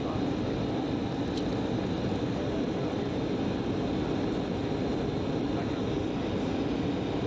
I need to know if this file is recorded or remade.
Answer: recorded